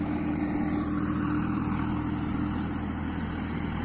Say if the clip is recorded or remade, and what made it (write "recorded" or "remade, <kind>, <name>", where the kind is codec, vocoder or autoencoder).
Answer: recorded